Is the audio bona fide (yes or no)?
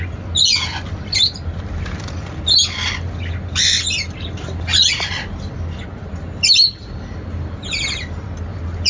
yes